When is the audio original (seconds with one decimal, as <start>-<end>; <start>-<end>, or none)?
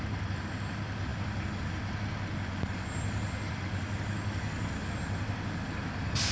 0.0-6.3